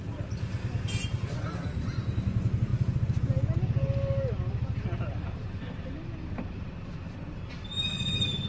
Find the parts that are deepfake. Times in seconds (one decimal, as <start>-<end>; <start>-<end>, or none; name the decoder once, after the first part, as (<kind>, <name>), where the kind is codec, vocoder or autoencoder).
none